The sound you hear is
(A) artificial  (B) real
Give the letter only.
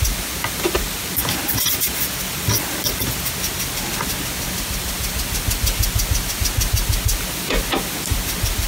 B